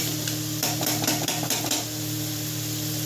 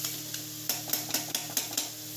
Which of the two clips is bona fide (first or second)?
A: second